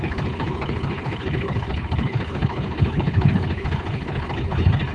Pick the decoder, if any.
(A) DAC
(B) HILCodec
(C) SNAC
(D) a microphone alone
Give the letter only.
B